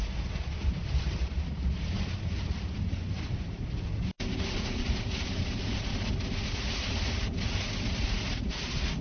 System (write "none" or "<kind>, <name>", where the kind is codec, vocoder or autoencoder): none